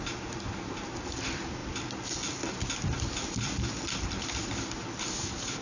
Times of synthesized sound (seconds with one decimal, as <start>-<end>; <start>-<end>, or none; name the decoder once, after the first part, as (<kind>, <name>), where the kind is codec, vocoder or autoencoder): none